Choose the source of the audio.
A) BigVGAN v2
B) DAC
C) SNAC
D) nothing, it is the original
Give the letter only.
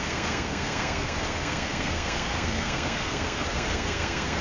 C